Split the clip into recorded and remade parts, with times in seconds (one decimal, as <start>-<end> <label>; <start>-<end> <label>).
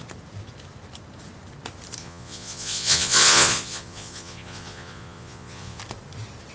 0.0-2.0 recorded; 2.0-5.8 remade; 5.8-6.5 recorded